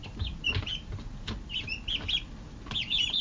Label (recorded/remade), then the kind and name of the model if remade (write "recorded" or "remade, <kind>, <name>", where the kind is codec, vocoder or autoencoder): recorded